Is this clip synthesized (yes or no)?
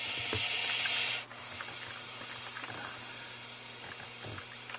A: no